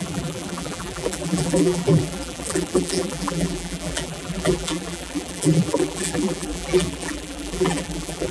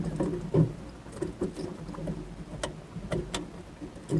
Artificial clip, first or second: first